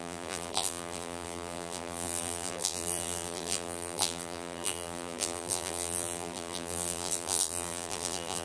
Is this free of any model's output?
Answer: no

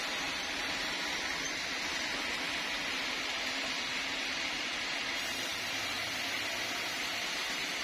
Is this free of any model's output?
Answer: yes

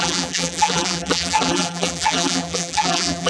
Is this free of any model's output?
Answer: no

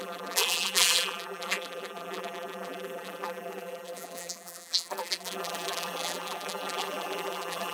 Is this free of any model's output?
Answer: no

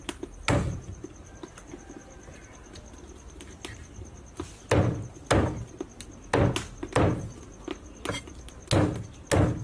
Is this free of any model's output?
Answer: yes